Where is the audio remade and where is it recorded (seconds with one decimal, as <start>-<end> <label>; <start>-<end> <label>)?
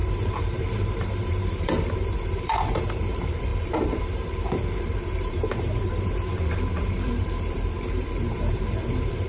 0.0-9.3 remade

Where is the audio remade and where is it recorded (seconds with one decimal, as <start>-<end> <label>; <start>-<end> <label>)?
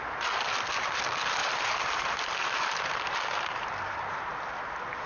0.0-1.4 recorded; 1.4-4.3 remade; 4.3-5.1 recorded